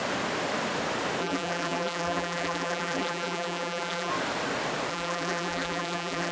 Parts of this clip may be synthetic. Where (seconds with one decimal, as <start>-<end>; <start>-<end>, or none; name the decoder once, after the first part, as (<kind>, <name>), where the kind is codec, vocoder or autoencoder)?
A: 1.2-4.1 (vocoder, BigVGAN v2); 4.9-6.3